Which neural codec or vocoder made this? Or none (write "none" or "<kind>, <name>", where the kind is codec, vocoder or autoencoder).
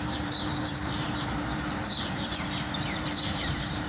vocoder, BigVGAN v2